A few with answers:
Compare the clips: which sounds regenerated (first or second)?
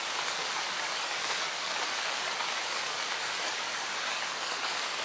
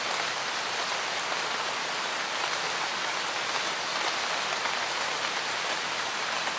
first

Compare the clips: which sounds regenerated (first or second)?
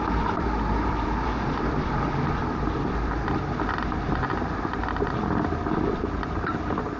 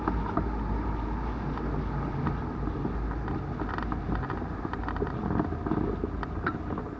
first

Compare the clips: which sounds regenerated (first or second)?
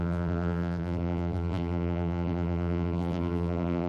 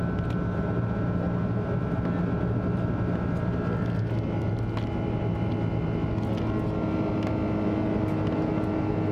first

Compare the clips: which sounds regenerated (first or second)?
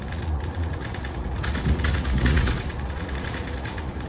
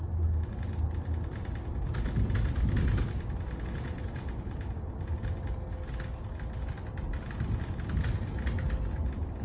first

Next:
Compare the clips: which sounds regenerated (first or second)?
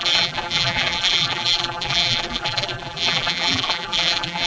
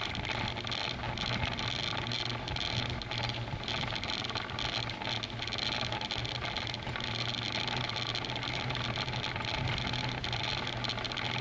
first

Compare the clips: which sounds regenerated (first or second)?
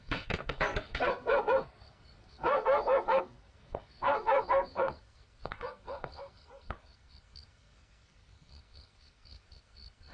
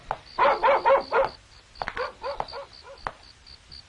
first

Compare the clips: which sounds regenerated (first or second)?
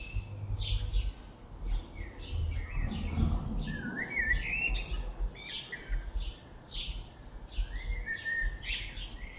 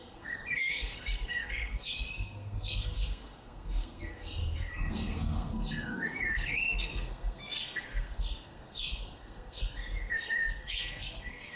second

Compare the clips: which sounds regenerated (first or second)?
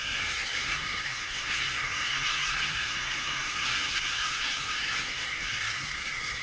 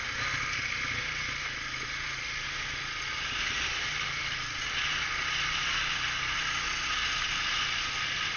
first